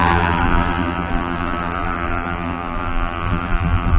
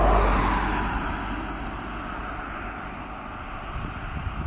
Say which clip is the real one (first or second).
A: second